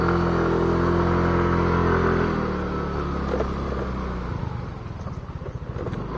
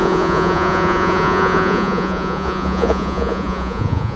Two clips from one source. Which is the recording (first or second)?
first